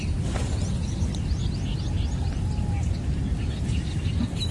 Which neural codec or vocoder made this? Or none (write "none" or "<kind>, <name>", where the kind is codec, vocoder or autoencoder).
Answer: none